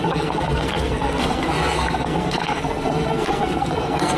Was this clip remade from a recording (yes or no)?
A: yes